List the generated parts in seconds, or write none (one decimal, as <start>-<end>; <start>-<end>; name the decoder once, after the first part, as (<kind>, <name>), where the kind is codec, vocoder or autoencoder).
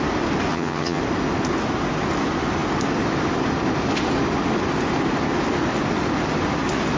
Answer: 0.5-1.0 (vocoder, HiFi-GAN)